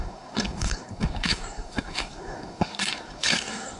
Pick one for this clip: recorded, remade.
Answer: remade